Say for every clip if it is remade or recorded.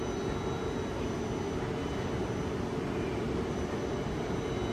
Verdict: recorded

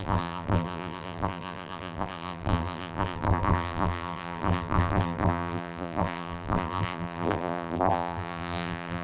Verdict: remade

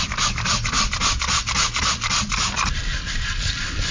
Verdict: recorded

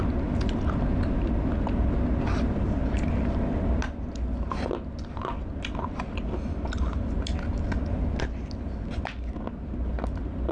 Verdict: recorded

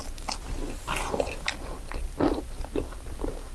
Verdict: recorded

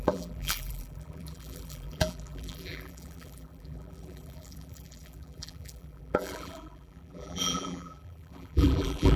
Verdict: remade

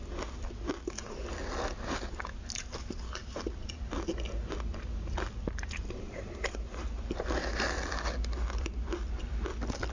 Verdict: recorded